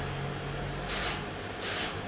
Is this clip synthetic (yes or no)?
no